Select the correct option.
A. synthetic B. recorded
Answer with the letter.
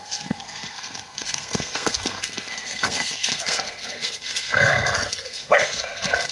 A